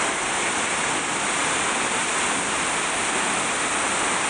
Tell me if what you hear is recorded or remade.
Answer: recorded